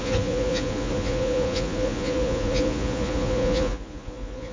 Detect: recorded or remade remade